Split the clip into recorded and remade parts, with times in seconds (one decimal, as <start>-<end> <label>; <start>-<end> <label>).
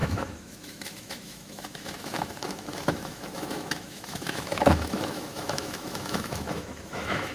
0.0-7.3 remade